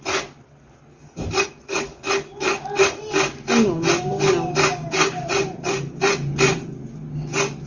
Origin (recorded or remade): recorded